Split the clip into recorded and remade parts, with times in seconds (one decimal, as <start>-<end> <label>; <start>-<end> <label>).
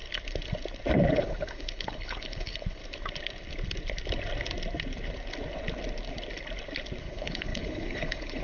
0.0-1.1 recorded; 1.1-2.8 remade; 2.8-7.0 recorded; 7.0-8.4 remade